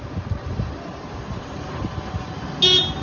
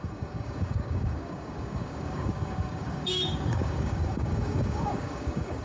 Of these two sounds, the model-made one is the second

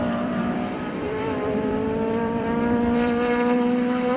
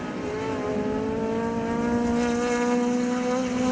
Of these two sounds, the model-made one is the first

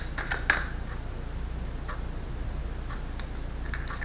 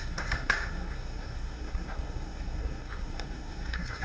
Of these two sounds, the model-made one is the second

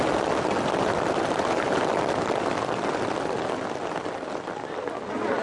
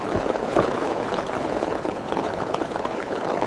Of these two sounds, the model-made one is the second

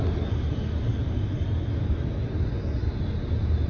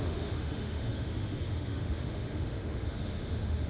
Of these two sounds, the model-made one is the second